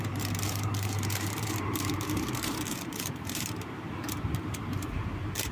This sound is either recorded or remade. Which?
remade